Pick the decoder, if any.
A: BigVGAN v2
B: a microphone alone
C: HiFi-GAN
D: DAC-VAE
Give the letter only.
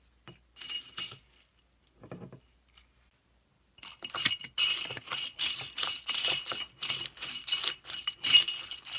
B